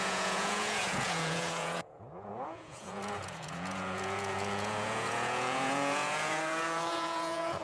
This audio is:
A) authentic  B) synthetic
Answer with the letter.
B